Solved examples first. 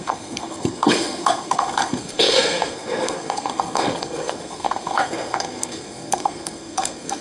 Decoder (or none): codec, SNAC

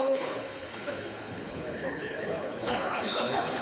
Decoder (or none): codec, HILCodec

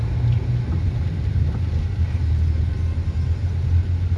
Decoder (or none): none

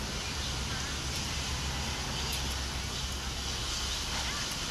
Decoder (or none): none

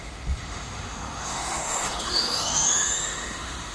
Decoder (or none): autoencoder, DAC-VAE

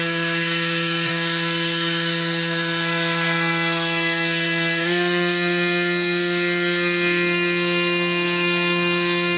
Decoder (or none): codec, SNAC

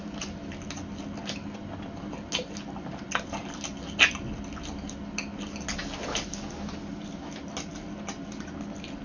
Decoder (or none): none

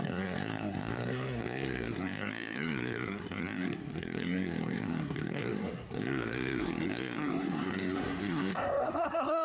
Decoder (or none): codec, SNAC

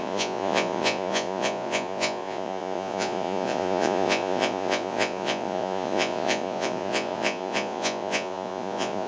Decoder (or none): vocoder, Vocos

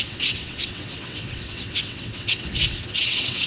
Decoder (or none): vocoder, WaveNeXt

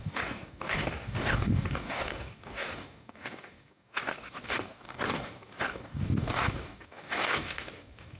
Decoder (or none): codec, DAC